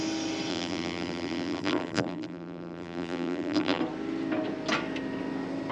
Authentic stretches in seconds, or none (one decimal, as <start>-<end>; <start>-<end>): 0.0-0.5; 3.8-5.7